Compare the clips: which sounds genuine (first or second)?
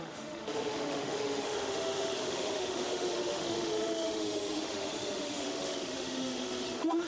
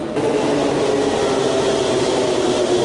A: second